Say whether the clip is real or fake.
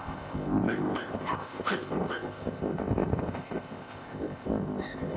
fake